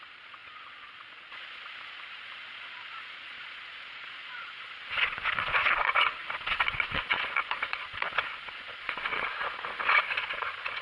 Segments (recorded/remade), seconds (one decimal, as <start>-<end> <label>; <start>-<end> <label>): 0.0-10.8 remade